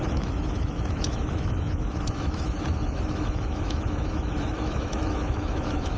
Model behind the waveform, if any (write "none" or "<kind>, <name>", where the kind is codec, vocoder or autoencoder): autoencoder, DAC-VAE